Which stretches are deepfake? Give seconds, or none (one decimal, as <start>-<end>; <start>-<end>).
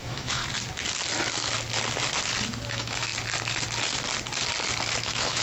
0.0-0.4; 2.7-3.1; 5.0-5.4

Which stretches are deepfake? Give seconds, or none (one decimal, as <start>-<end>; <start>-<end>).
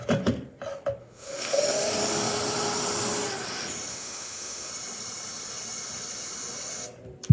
1.0-1.6; 3.9-4.7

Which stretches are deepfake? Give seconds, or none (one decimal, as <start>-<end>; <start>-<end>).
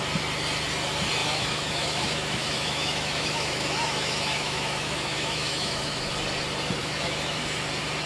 1.2-6.1; 6.8-7.4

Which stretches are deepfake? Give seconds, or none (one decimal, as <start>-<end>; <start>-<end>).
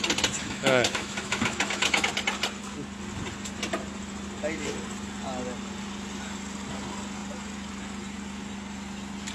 0.4-2.1